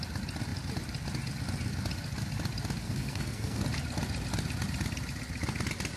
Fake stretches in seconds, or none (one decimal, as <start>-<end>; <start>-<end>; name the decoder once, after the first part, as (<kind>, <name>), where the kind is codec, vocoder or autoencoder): 2.8-3.6 (codec, SNAC)